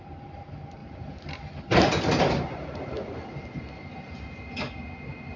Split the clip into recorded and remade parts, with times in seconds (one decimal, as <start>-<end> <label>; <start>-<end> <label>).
0.0-5.4 recorded